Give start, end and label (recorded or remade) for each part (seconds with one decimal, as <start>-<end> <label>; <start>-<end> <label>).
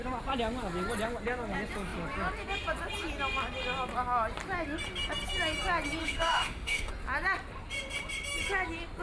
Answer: 0.0-6.0 recorded; 6.0-6.9 remade; 6.9-9.0 recorded